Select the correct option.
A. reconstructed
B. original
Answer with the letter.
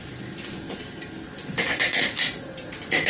B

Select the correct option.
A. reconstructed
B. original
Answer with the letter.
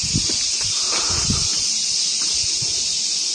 B